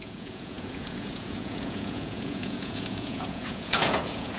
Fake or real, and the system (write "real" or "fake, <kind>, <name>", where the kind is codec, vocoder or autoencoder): fake, vocoder, Vocos